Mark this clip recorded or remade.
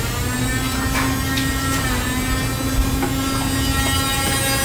recorded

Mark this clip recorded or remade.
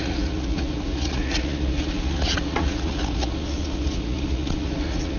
remade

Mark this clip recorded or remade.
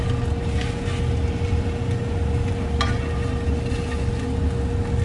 recorded